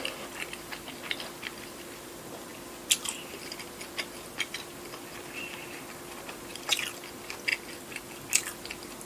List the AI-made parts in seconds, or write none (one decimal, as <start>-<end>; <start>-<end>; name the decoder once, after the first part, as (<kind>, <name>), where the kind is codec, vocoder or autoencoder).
none